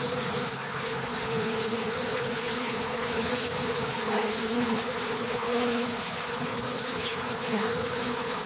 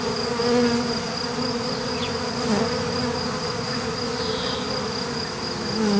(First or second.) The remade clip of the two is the first